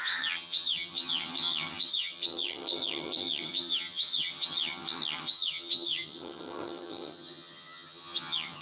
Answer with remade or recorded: remade